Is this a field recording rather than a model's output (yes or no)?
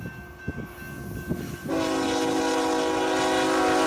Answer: yes